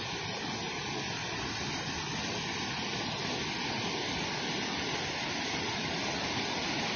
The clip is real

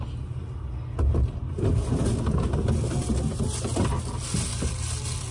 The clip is real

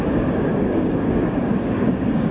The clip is fake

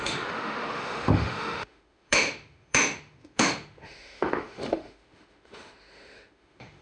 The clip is fake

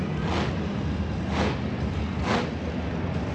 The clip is real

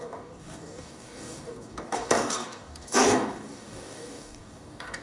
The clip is fake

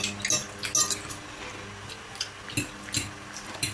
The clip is real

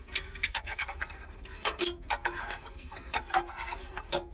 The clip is fake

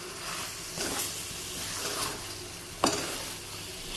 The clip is real